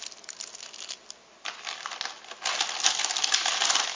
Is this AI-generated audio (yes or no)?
no